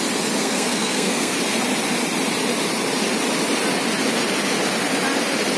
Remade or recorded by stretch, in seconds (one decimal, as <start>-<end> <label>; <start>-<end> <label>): 0.0-0.4 recorded; 0.4-1.4 remade; 1.4-5.6 recorded